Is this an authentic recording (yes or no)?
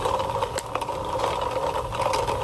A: yes